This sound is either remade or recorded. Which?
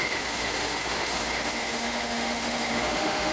remade